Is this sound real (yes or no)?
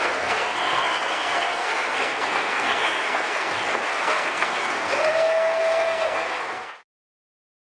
no